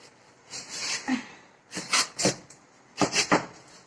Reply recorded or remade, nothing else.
recorded